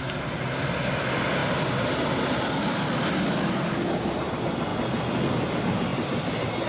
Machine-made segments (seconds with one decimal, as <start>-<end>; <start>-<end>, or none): none